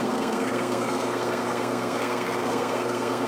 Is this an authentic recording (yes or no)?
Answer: no